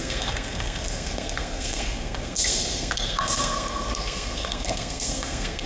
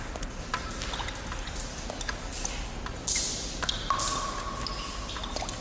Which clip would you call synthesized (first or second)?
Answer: first